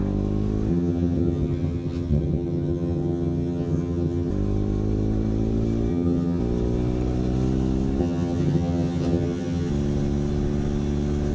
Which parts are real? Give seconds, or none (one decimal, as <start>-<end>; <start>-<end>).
0.0-0.7; 4.3-5.9; 6.4-8.0; 9.7-11.3